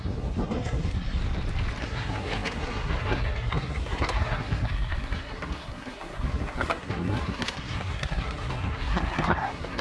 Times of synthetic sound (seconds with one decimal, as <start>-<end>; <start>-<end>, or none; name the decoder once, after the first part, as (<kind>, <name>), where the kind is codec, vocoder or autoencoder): 0.0-1.2 (codec, SNAC); 1.8-9.8